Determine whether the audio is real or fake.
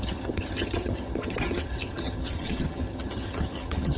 fake